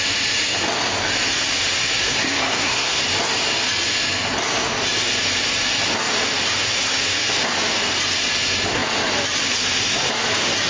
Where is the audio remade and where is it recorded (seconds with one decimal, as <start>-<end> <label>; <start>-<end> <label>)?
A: 0.0-2.0 recorded; 2.0-3.0 remade; 3.0-10.7 recorded